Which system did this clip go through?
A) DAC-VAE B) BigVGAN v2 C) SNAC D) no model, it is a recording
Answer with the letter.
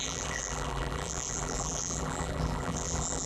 B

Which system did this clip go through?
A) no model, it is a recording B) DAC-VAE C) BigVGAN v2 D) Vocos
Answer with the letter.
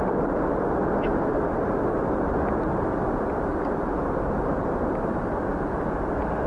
A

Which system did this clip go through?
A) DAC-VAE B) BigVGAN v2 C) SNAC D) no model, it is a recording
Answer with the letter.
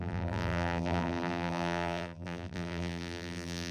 B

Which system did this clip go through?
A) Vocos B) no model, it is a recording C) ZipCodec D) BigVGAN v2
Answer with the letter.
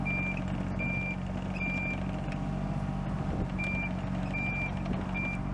B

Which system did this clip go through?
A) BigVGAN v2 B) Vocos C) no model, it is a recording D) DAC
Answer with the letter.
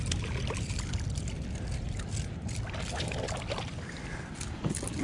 C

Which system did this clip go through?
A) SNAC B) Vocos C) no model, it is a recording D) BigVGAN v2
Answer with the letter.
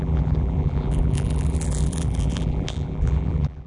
D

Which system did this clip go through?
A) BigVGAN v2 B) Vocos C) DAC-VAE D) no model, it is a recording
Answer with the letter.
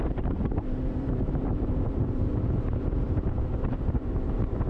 A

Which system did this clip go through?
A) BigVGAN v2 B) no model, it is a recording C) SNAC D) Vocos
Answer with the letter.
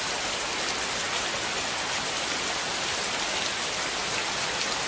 B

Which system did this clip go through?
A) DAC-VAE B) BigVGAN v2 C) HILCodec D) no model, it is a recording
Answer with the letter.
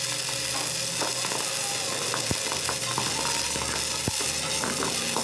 D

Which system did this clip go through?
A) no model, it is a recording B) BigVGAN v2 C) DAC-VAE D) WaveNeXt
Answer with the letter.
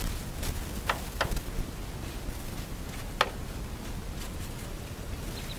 A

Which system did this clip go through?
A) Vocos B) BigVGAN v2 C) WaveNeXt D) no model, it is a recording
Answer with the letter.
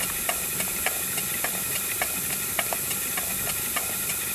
D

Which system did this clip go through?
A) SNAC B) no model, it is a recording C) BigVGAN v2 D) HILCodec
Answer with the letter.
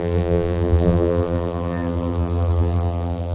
C